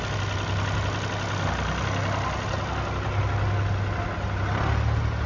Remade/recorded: recorded